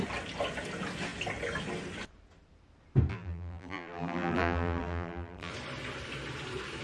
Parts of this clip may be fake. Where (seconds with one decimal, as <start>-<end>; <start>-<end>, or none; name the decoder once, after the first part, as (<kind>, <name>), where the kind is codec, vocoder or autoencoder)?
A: 3.1-5.5 (vocoder, BigVGAN v2)